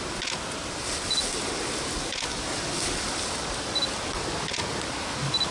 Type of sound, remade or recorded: recorded